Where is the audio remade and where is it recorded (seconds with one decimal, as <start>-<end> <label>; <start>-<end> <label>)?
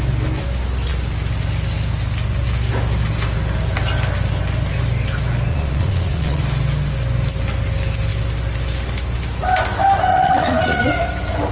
0.0-5.5 recorded; 5.5-6.4 remade; 6.4-10.1 recorded; 10.1-10.9 remade; 10.9-11.5 recorded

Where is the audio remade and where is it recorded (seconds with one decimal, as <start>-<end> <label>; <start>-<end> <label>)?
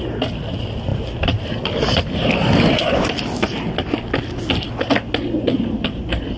0.0-6.4 recorded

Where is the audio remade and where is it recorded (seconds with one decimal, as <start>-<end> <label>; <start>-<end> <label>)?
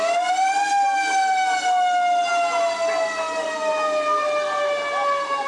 0.0-5.5 recorded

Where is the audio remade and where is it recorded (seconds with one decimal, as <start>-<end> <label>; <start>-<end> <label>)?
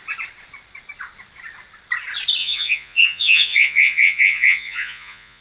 0.0-2.4 recorded; 2.4-5.4 remade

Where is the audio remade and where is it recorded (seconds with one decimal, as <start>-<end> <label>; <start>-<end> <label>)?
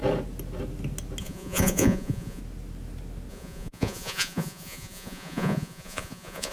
0.0-1.2 recorded; 1.2-2.4 remade; 2.4-3.3 recorded; 3.3-6.5 remade